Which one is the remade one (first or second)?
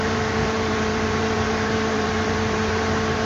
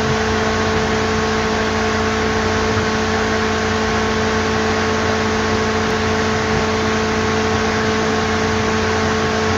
first